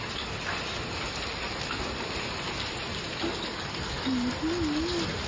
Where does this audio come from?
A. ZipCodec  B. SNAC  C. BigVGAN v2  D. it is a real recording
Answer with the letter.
D